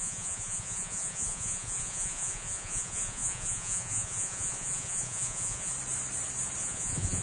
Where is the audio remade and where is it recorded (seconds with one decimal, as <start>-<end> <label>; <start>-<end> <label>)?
0.0-5.7 remade; 5.7-6.6 recorded; 6.6-7.2 remade